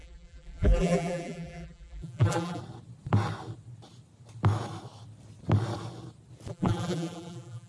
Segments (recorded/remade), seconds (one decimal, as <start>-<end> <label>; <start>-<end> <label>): 0.0-2.6 remade; 2.6-6.5 recorded; 6.5-7.7 remade